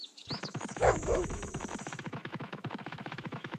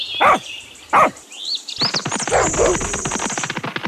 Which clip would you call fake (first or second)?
first